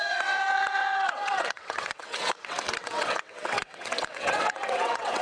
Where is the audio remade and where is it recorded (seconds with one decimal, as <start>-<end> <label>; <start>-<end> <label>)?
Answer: 0.0-5.2 remade